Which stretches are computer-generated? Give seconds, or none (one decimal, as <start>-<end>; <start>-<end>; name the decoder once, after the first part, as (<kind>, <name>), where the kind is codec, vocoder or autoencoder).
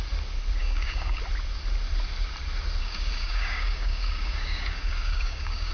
0.6-1.2 (codec, DAC); 2.8-5.7